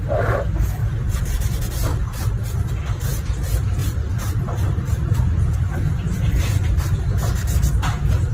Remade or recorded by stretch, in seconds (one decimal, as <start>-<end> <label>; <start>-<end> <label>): 0.0-1.9 recorded; 1.9-2.7 remade; 2.7-3.8 recorded; 3.8-6.4 remade; 6.4-8.3 recorded